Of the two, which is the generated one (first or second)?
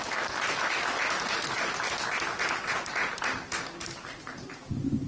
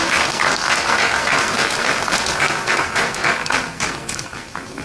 second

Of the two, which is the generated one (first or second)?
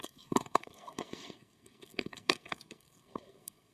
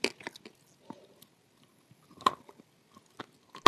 first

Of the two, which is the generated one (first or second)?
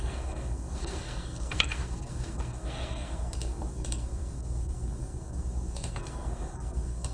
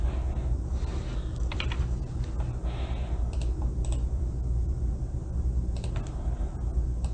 first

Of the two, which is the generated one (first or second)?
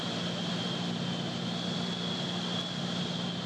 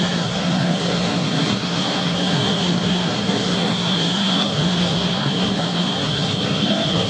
second